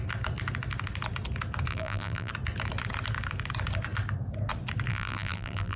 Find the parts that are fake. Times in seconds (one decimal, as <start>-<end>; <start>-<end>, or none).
1.7-2.3; 4.9-5.8